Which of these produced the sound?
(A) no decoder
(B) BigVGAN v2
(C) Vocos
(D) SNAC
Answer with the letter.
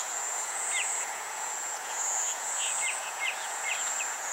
C